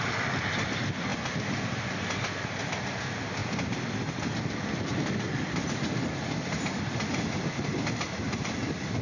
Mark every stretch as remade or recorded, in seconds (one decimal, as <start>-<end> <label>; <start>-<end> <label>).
0.0-9.0 recorded